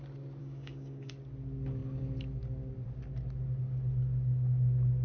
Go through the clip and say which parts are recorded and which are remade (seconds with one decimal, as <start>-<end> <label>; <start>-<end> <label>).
0.0-0.4 recorded; 0.4-1.1 remade; 1.1-5.0 recorded